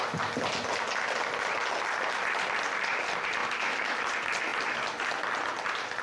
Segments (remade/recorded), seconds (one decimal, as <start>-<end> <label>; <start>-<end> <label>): 0.0-3.4 recorded; 3.4-4.0 remade; 4.0-6.0 recorded